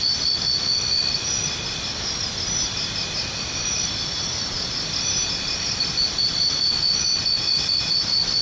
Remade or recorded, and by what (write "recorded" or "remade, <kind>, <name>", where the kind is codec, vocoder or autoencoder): recorded